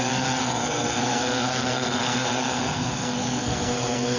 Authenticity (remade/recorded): remade